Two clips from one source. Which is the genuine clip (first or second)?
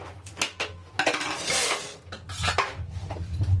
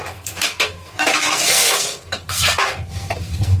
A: first